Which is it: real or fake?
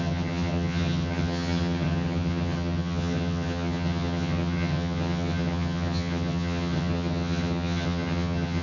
fake